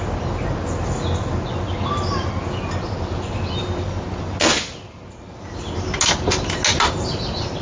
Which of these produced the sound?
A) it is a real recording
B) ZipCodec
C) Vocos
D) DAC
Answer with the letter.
A